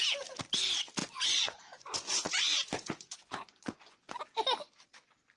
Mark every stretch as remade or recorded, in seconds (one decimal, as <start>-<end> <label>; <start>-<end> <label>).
0.0-1.0 recorded; 1.0-4.2 remade; 4.2-5.4 recorded